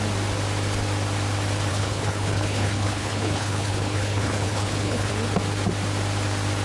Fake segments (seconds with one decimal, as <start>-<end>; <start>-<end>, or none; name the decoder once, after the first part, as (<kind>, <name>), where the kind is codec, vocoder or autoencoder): 1.7-5.1 (codec, HILCodec)